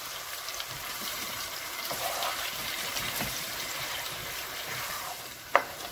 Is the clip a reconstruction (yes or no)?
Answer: yes